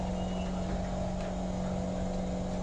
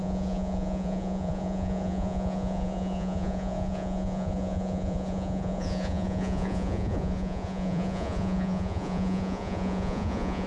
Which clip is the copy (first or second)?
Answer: second